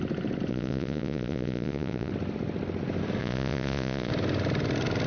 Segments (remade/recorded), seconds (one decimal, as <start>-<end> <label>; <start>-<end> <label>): 0.0-0.5 recorded; 0.5-2.1 remade; 2.1-3.2 recorded; 3.2-4.1 remade; 4.1-5.1 recorded